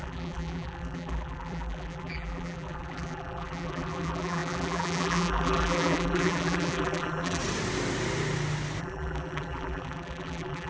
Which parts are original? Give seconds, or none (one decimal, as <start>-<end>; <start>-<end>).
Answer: 7.4-8.8